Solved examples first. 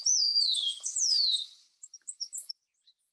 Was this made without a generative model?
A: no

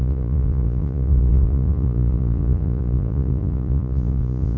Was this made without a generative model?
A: no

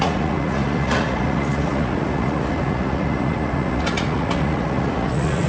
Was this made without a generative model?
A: no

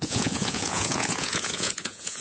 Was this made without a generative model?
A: no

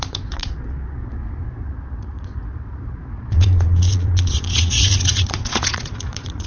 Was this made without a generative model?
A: no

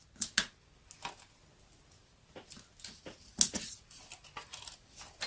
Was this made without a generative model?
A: yes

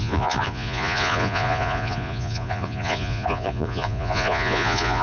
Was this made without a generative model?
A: no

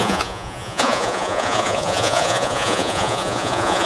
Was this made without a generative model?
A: no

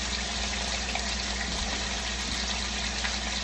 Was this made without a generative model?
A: yes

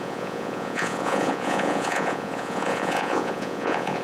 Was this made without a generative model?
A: no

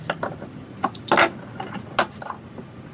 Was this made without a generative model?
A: yes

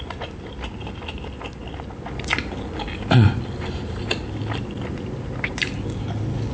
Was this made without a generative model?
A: yes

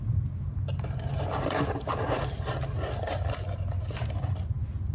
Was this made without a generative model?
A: yes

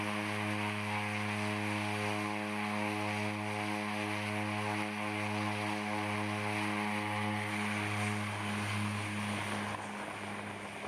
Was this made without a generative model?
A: yes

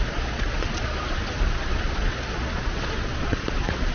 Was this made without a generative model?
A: no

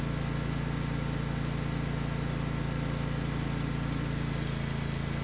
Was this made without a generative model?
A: yes